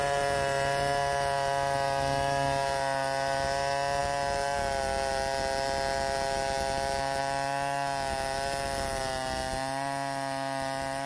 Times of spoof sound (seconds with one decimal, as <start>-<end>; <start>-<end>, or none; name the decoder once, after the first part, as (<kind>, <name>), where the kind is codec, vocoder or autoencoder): none